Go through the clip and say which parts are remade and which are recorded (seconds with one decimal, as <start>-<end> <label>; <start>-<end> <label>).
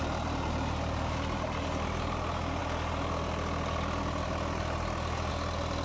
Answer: 0.0-5.8 recorded